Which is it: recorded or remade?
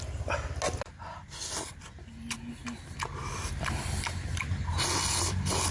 recorded